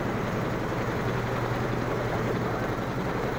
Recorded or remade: remade